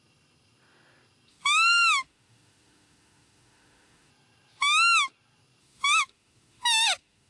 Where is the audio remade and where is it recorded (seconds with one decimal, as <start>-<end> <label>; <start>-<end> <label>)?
0.0-1.3 recorded; 1.3-4.1 remade; 4.1-5.6 recorded; 5.6-7.3 remade